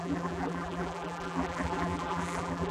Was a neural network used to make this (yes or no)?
yes